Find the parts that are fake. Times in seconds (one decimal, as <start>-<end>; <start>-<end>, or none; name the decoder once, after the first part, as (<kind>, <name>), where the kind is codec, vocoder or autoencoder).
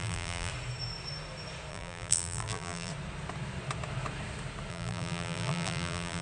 0.0-0.5 (vocoder, BigVGAN v2); 1.7-2.9; 4.7-6.2